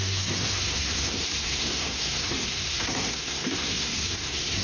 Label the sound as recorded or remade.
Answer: remade